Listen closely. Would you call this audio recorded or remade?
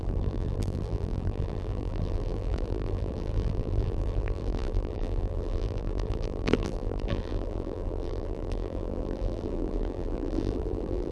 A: remade